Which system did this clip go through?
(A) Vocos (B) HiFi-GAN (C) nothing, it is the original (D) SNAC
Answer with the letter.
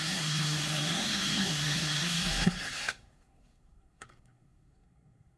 D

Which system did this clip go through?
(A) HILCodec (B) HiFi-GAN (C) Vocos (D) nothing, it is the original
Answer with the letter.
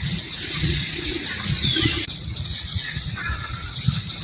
C